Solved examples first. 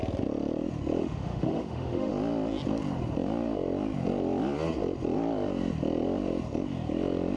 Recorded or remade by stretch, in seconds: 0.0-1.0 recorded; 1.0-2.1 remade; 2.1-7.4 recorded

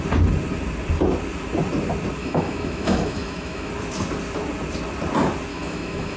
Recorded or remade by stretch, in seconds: 0.0-2.2 recorded; 2.2-3.7 remade; 3.7-5.5 recorded; 5.5-6.2 remade

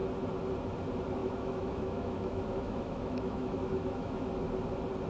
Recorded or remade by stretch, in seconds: 0.0-1.2 recorded; 1.2-4.3 remade; 4.3-5.1 recorded

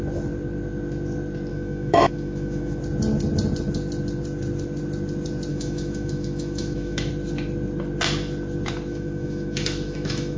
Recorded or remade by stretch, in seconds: 0.0-1.5 recorded; 1.5-2.8 remade; 2.8-5.5 recorded; 5.5-7.1 remade; 7.1-8.9 recorded; 8.9-10.4 remade